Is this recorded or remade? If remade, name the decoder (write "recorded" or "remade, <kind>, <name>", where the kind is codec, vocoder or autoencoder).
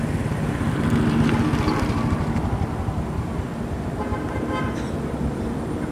recorded